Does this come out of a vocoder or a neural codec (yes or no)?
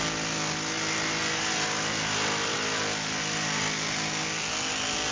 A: no